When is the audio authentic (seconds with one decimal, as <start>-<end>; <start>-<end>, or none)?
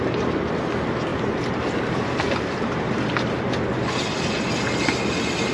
0.0-5.5